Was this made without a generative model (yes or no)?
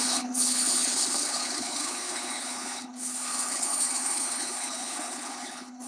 no